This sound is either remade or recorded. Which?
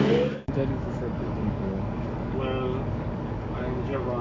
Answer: remade